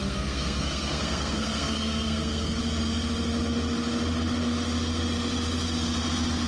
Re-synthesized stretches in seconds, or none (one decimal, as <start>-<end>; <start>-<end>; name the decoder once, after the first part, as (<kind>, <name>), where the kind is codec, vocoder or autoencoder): 0.0-2.6 (codec, SNAC)